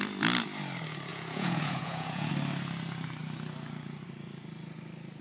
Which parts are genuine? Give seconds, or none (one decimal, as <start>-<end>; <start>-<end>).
0.0-1.1; 2.3-5.2